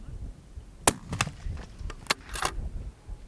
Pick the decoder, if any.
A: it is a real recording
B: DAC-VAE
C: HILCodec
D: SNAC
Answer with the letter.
A